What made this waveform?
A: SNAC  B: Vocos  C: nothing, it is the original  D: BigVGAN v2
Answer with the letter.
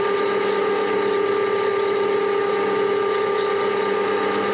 C